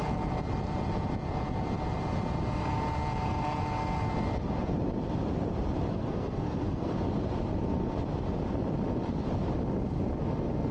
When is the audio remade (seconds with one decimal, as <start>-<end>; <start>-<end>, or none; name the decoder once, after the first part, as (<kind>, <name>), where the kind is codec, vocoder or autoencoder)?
5.9-6.9 (codec, SNAC)